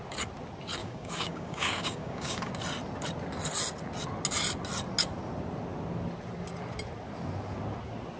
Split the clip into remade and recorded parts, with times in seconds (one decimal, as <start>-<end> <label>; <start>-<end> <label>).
0.0-0.8 recorded; 0.8-2.5 remade; 2.5-8.2 recorded